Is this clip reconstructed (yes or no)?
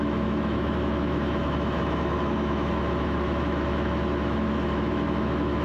yes